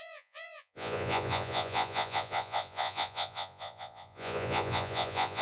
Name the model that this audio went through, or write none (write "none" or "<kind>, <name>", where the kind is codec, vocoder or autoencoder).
vocoder, Vocos